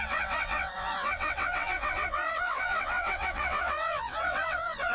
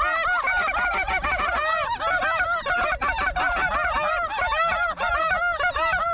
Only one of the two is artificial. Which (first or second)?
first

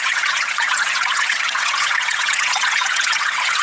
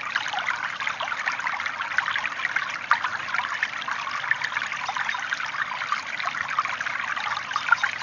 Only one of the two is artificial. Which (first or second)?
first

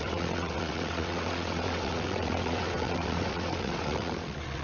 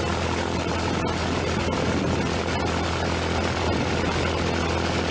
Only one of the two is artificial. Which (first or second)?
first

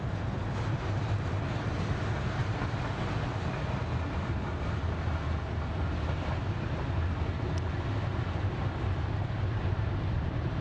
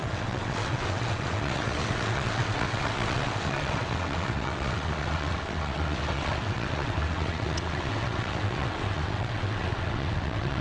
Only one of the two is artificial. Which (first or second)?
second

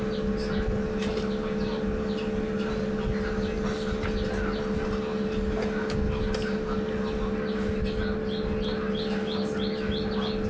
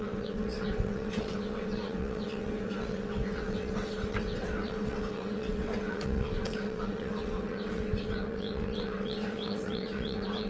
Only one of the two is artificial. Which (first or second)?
second